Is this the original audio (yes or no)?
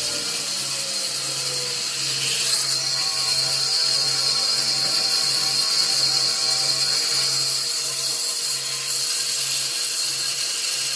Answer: yes